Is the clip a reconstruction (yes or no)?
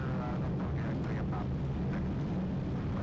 no